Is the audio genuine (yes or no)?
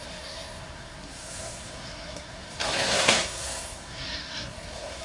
no